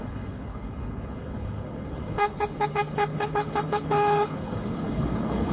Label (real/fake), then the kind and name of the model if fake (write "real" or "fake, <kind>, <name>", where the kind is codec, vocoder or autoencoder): fake, codec, HILCodec